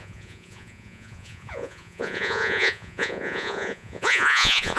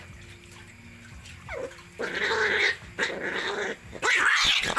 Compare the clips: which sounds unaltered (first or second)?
second